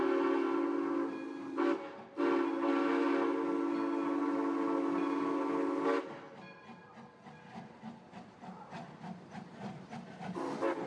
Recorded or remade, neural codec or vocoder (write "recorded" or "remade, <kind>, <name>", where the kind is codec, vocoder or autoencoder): recorded